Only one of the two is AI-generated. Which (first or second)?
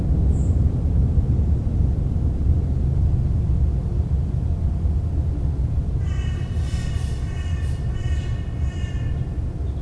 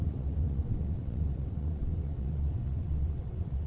second